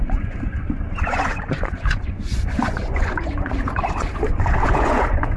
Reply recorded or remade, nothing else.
remade